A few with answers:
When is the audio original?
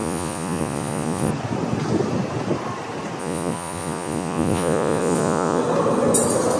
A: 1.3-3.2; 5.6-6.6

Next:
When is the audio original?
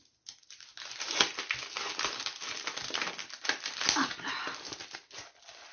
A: 0.0-5.7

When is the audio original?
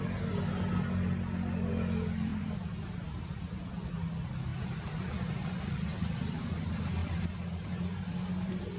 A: 0.0-2.3; 3.4-4.5; 5.5-7.0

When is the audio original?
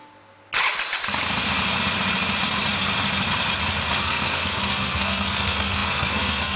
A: 0.0-4.0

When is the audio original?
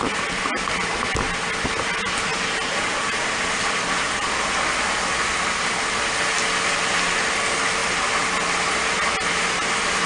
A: 0.0-10.1